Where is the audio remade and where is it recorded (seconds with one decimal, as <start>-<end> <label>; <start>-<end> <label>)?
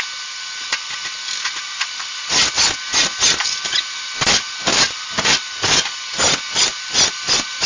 0.0-1.4 recorded; 1.4-2.5 remade; 2.5-7.7 recorded